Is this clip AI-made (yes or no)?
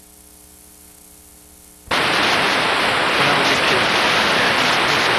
no